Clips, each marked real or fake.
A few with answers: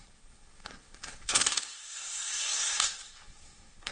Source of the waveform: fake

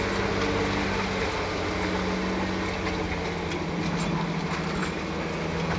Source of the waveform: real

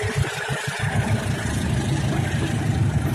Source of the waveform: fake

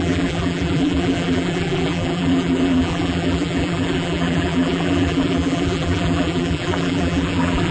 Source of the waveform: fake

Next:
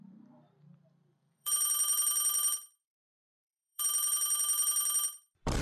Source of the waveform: fake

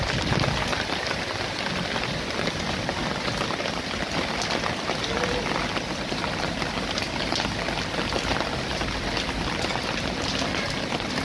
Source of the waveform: real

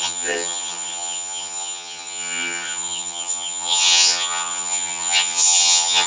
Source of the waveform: fake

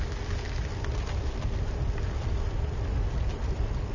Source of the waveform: real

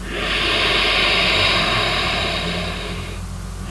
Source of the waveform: real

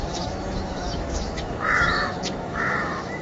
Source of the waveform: fake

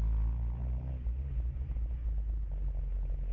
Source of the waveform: real